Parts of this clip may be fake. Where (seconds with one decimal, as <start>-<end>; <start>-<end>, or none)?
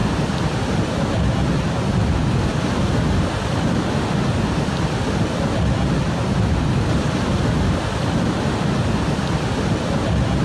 none